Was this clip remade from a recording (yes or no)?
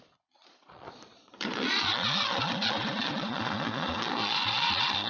yes